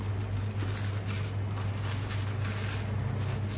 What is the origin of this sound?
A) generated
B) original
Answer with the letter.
B